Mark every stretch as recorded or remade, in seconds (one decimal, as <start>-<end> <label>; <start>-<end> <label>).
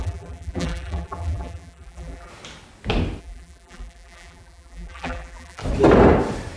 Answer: 0.0-2.3 remade; 2.3-3.2 recorded; 3.2-5.6 remade; 5.6-6.6 recorded